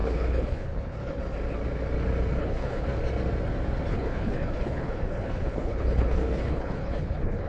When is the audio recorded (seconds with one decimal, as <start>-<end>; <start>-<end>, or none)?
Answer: 1.2-2.4; 3.0-3.9